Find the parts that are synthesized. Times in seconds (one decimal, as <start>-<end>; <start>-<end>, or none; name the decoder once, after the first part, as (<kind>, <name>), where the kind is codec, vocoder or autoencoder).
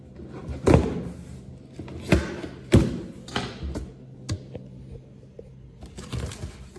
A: none